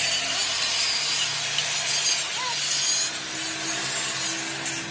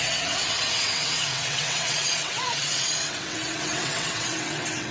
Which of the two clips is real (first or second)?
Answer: first